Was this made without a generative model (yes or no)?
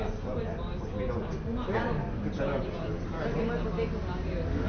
yes